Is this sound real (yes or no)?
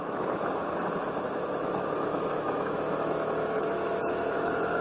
no